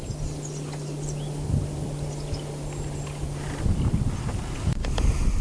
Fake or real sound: real